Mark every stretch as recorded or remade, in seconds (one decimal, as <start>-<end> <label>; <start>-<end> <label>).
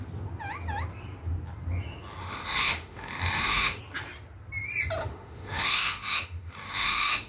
0.0-2.2 recorded; 2.2-3.8 remade; 3.8-5.0 recorded; 5.0-7.3 remade